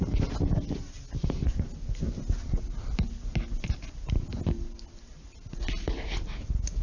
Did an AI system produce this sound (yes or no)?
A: no